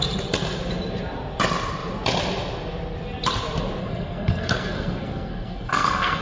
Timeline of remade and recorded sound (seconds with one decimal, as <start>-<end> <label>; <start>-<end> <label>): 0.0-3.8 recorded; 3.8-6.2 remade